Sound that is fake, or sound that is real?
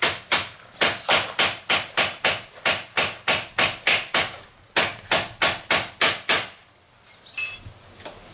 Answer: real